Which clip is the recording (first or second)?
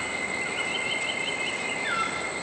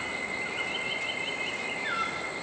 second